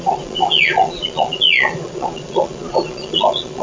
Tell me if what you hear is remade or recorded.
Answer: remade